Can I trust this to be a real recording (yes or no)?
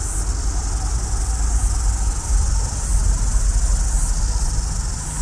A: yes